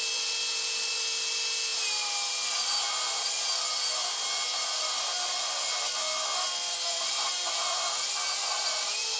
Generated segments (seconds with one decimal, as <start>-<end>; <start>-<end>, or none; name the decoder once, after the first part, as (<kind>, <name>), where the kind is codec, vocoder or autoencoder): none